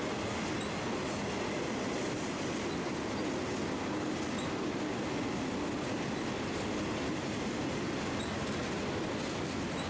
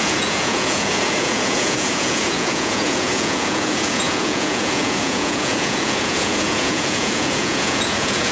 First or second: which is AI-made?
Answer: second